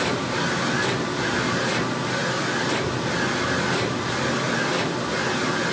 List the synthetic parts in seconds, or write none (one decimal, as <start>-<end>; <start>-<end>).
none